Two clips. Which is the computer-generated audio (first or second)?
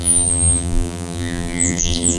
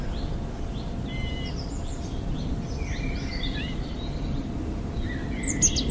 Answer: first